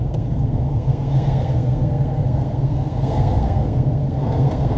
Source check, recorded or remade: remade